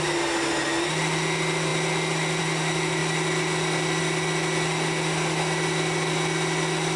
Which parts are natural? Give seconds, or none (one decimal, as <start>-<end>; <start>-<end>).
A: 0.0-7.0